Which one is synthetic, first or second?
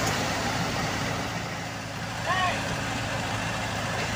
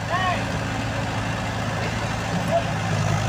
first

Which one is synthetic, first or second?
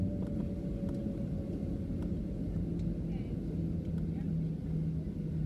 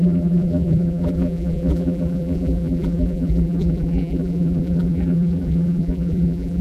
second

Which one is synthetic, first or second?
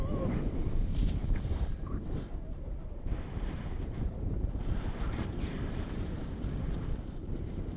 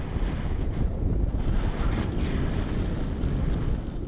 first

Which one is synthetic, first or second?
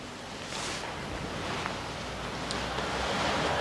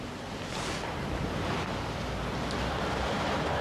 second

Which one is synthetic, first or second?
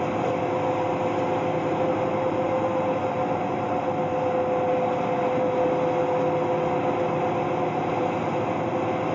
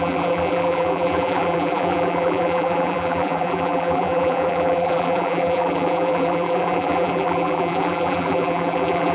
second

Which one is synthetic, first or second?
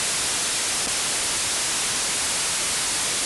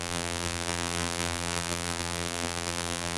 second